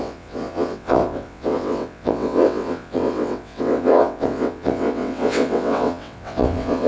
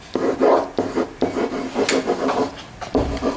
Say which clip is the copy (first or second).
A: first